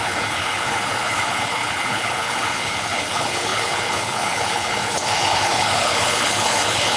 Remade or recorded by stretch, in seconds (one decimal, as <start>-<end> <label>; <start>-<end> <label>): 0.0-7.0 remade